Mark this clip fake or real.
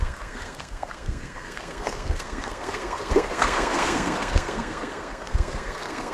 fake